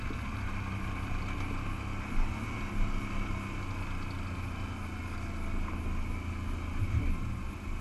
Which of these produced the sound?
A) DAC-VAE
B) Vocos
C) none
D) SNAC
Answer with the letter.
C